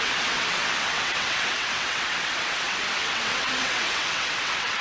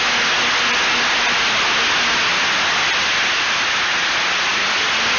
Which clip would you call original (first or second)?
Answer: second